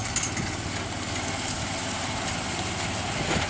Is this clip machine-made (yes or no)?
no